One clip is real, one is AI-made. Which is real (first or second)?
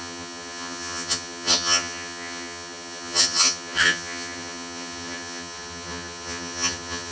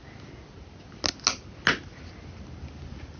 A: second